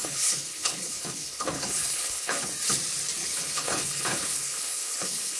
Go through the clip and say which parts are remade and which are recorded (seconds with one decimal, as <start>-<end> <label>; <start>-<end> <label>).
0.0-2.5 remade; 2.5-3.2 recorded; 3.2-5.4 remade